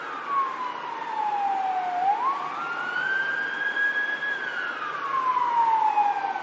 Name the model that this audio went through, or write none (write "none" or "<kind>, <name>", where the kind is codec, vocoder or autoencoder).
none